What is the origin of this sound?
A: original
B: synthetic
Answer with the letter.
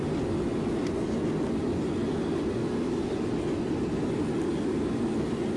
A